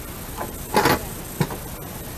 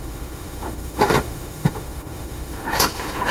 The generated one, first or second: second